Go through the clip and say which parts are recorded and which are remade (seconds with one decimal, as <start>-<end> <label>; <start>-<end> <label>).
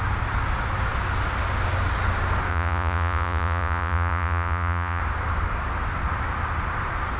0.0-2.5 recorded; 2.5-5.0 remade; 5.0-7.2 recorded